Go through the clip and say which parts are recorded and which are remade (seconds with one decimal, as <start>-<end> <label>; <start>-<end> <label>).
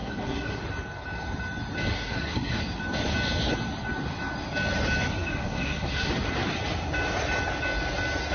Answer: 0.0-0.6 remade; 0.6-1.9 recorded; 1.9-2.6 remade; 2.6-5.1 recorded; 5.1-6.1 remade; 6.1-8.3 recorded